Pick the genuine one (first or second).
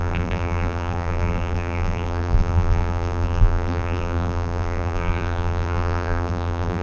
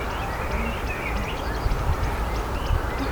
second